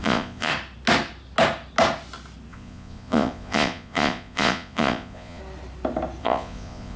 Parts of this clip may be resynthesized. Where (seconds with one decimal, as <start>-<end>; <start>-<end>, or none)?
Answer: 0.0-0.5; 2.5-5.4; 6.2-7.0